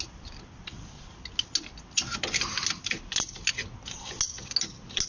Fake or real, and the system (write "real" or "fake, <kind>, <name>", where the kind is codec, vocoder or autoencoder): real